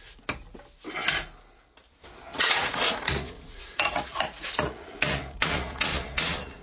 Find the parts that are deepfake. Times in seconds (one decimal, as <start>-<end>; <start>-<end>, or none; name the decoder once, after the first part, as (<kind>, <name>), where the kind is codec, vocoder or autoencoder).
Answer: 2.3-6.6 (vocoder, Vocos)